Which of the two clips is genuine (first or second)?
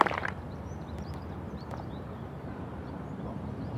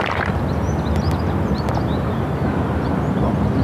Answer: second